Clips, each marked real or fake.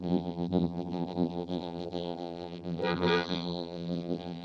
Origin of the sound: fake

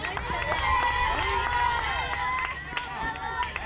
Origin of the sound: real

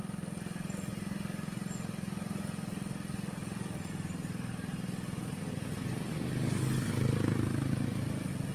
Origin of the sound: real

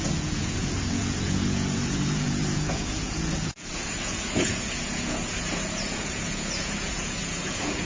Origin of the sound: fake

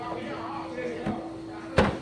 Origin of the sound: real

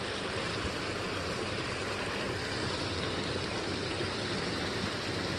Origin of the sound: real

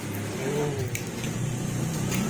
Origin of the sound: fake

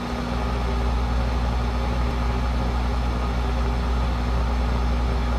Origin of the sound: real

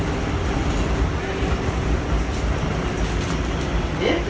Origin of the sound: real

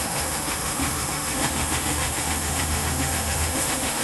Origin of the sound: fake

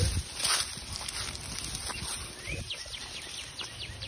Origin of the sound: real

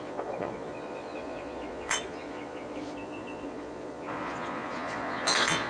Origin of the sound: fake